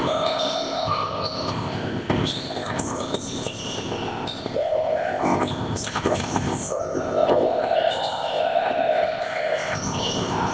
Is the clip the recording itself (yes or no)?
no